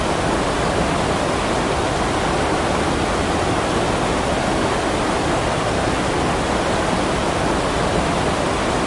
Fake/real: real